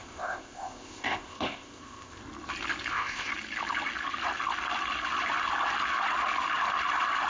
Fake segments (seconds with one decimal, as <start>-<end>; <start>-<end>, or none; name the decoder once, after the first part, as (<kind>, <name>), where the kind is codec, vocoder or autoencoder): 0.0-2.2 (codec, ZipCodec); 2.9-3.3